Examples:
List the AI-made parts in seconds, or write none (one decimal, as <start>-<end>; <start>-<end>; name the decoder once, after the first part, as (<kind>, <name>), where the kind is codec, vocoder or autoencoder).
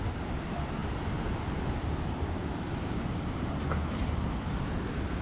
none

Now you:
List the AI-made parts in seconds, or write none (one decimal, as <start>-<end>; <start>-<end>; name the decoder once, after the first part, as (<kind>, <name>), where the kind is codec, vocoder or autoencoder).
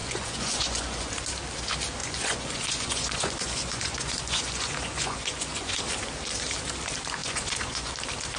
0.0-1.1 (vocoder, Vocos); 2.0-5.8; 7.2-7.9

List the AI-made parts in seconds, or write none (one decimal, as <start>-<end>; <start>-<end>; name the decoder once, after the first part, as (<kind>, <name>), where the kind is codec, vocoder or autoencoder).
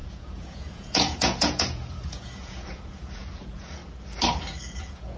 0.0-3.8 (vocoder, Vocos); 4.6-5.2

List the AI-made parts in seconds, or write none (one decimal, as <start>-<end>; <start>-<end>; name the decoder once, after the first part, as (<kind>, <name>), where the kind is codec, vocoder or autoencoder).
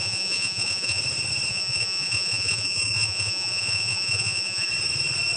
0.0-1.0 (vocoder, Vocos); 1.5-4.7